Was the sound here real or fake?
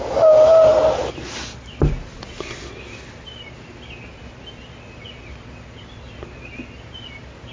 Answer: real